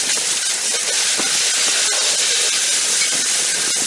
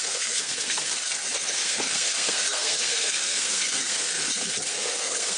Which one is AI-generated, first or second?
second